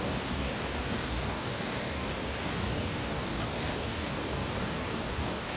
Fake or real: fake